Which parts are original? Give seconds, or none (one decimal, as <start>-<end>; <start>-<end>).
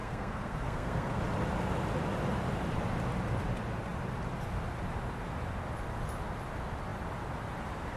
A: 1.2-8.0